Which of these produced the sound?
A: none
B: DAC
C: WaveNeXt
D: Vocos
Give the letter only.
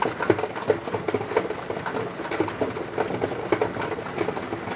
A